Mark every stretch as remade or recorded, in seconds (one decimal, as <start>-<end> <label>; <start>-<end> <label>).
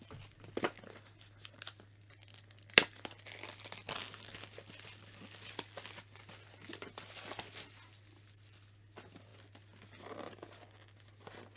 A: 0.0-11.6 recorded